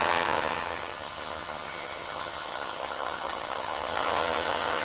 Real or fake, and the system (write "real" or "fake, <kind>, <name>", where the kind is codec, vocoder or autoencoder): fake, vocoder, HiFi-GAN